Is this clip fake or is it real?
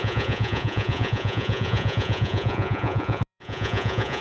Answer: fake